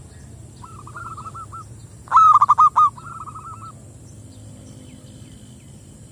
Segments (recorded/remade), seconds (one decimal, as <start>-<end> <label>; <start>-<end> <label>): 0.0-6.1 recorded

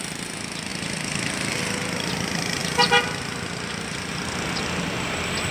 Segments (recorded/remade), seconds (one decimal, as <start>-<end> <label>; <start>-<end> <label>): 0.0-0.7 recorded; 0.7-2.1 remade; 2.1-2.6 recorded; 2.6-4.1 remade; 4.1-5.5 recorded

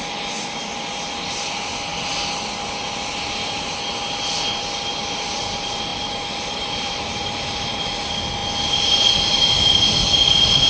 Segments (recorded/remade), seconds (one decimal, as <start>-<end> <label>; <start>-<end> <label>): 0.0-5.9 recorded; 5.9-7.8 remade; 7.8-10.7 recorded